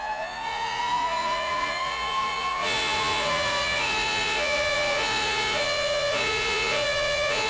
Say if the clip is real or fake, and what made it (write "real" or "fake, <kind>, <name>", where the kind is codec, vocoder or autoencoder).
fake, vocoder, Vocos